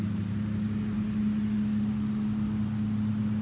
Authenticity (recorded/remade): recorded